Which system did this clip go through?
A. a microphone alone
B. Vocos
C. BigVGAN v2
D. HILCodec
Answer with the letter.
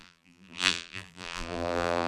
C